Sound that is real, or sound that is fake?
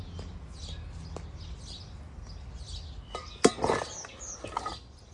real